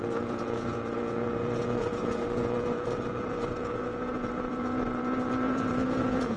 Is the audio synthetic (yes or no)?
yes